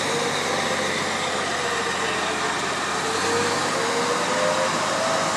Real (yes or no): yes